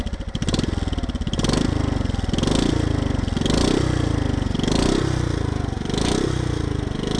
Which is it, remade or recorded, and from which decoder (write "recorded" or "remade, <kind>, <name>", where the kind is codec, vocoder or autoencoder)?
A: recorded